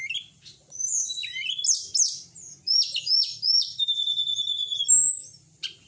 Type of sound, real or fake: real